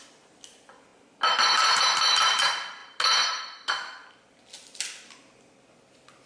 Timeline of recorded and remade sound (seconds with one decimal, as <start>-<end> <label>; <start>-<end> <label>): 0.0-6.3 recorded